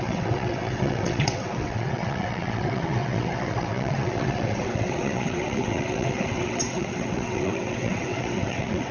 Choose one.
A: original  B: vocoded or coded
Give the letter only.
B